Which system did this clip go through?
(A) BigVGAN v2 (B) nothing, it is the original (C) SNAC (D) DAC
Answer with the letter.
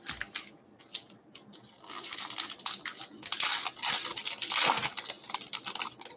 B